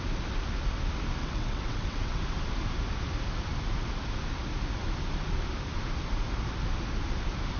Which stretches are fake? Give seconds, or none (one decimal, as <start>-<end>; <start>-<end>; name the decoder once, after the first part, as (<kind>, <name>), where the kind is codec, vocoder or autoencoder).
1.2-2.2 (vocoder, WaveNeXt)